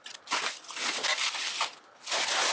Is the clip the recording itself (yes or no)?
yes